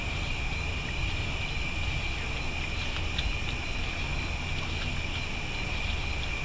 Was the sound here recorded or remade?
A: recorded